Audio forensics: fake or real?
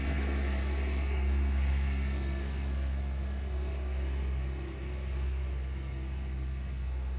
fake